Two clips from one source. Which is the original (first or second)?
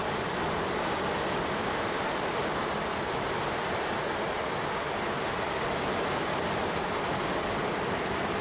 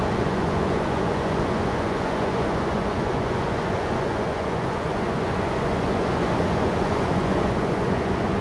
first